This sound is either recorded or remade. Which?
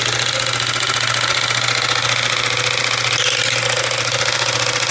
recorded